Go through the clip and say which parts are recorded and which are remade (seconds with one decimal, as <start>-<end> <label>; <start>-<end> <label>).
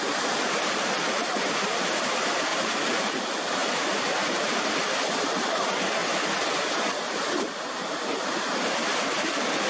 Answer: 0.0-2.5 recorded; 2.5-3.1 remade; 3.1-3.6 recorded; 3.6-4.4 remade; 4.4-9.7 recorded